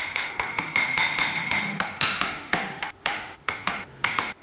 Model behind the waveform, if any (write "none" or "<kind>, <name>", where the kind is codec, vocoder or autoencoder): autoencoder, DAC-VAE